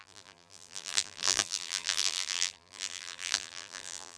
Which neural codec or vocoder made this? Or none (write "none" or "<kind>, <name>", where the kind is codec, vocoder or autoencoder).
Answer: vocoder, BigVGAN v2